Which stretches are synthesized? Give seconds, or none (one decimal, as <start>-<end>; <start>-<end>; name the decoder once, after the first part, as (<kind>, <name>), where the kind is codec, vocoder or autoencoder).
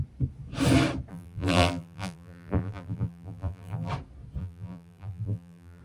1.1-3.9 (vocoder, BigVGAN v2); 4.4-5.8